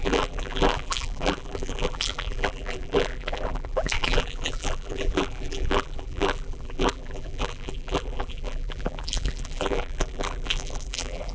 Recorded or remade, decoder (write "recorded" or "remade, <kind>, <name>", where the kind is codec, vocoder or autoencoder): remade, vocoder, BigVGAN v2